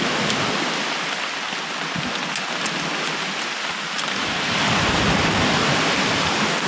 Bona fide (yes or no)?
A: yes